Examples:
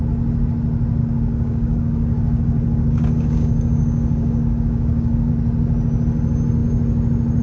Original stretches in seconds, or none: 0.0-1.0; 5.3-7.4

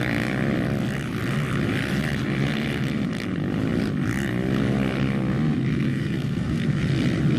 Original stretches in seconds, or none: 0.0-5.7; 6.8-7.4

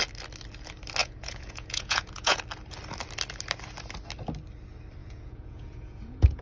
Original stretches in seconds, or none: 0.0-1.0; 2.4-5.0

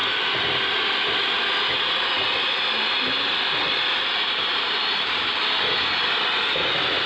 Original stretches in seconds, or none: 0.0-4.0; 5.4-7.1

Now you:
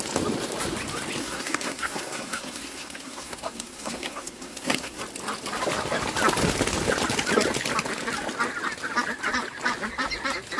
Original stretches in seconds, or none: 0.0-1.2; 5.0-10.6

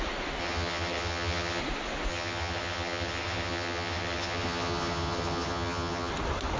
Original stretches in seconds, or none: 0.0-0.4; 1.6-2.1; 6.1-6.6

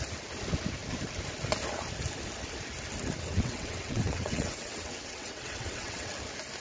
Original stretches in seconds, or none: 0.0-3.3; 6.1-6.6

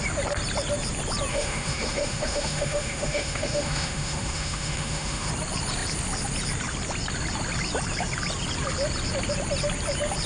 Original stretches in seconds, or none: 0.0-1.3; 5.3-10.3